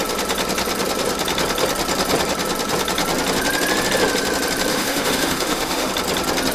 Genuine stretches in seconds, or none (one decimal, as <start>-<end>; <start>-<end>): 0.0-4.7; 5.9-6.5